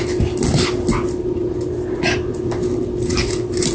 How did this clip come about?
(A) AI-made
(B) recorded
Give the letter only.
B